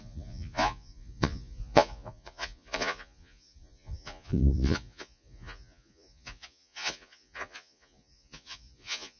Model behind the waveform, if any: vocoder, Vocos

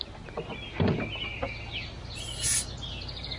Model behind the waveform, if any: none